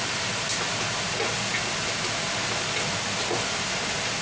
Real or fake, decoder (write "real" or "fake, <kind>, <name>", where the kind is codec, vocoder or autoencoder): real